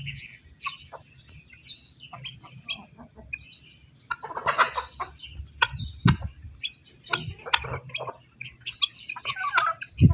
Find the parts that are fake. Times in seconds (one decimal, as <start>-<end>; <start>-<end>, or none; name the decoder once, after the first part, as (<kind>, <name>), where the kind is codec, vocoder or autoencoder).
none